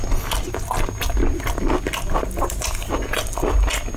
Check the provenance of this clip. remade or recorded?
recorded